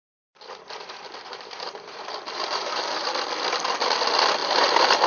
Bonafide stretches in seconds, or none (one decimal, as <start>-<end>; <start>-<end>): 3.1-4.4

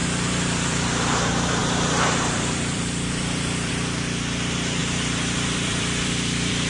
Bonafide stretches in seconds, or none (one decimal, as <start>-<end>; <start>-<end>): 1.1-1.6; 3.7-4.8

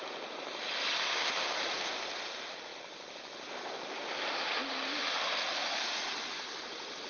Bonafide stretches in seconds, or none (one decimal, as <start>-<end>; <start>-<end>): 2.7-5.0

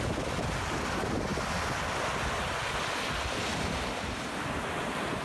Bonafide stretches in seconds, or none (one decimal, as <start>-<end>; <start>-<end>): 0.0-3.5; 4.3-5.2

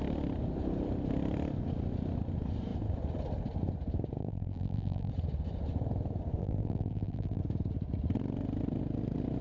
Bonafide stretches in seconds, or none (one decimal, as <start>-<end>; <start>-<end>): 0.0-4.2; 5.1-6.4; 7.4-9.4